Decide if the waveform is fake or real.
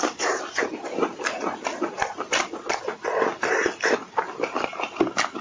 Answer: real